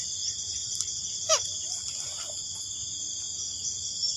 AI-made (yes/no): no